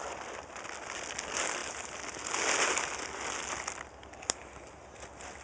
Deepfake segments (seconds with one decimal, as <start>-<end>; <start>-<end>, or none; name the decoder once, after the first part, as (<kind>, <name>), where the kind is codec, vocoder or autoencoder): none